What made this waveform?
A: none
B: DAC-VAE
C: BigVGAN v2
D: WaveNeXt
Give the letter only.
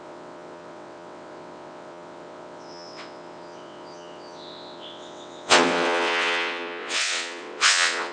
D